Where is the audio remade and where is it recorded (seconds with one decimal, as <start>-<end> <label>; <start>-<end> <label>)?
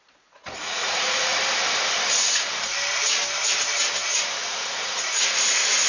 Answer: 0.0-1.3 remade; 1.3-4.4 recorded; 4.4-5.9 remade